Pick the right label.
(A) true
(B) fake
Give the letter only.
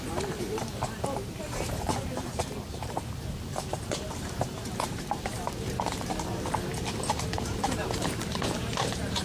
B